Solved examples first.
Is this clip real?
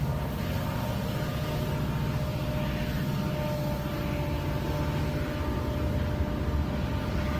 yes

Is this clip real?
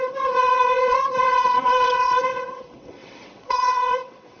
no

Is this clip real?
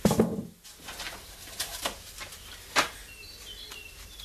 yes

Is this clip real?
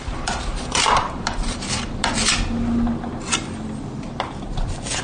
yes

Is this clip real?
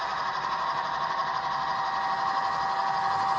yes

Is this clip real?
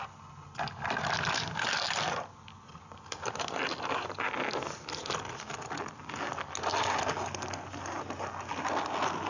yes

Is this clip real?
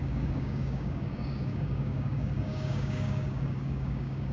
no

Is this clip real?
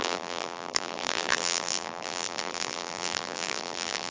no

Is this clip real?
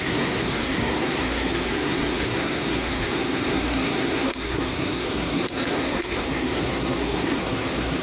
no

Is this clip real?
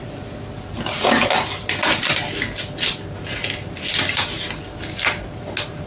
yes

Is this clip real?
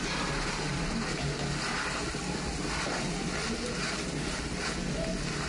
yes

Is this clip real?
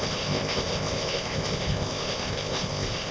no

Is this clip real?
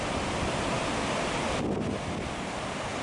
yes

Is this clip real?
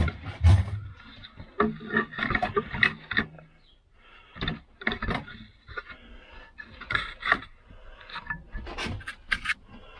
yes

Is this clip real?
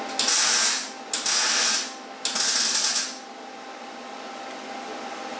yes